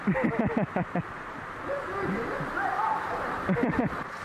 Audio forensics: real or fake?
real